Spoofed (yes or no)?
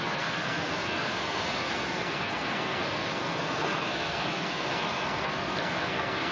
yes